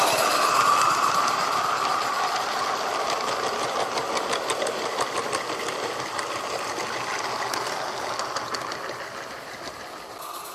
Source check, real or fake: real